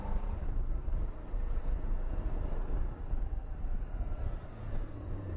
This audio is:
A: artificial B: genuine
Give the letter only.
A